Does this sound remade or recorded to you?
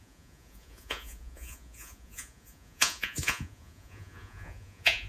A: remade